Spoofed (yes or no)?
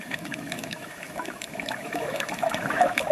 yes